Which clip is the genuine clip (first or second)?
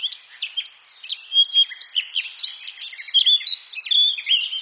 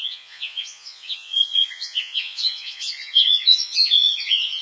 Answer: first